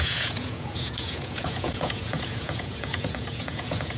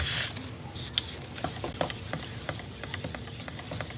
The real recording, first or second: second